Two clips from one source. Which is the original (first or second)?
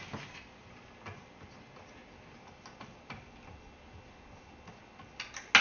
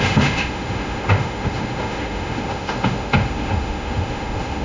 first